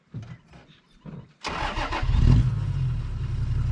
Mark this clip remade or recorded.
recorded